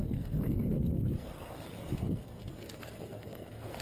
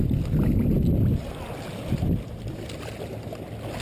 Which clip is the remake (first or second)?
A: first